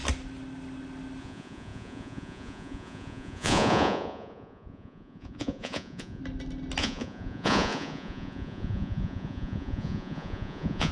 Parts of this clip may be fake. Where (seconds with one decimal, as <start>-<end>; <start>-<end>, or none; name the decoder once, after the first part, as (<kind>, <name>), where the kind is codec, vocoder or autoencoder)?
1.2-6.2 (vocoder, Vocos); 6.8-10.9